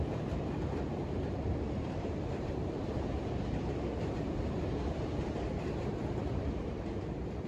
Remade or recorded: remade